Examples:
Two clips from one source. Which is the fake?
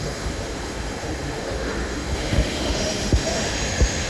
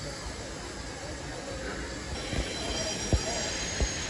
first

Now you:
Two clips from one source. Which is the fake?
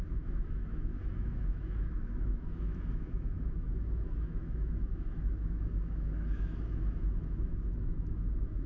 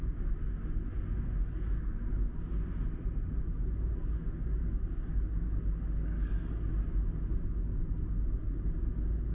first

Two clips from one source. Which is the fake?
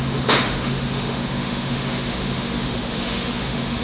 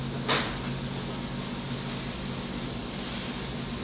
first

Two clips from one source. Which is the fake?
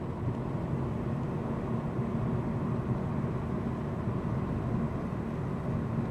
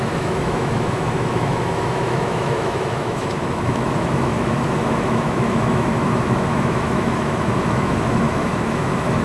second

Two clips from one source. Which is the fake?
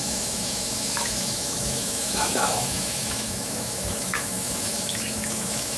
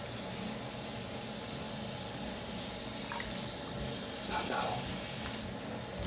first